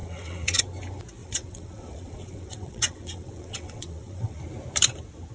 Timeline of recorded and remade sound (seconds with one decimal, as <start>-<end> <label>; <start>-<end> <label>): 0.0-0.6 remade; 0.6-1.2 recorded; 1.2-4.4 remade; 4.4-5.3 recorded